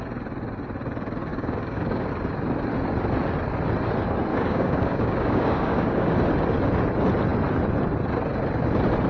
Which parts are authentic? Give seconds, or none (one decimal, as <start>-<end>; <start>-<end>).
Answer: 0.0-1.3; 2.1-4.3; 6.1-9.1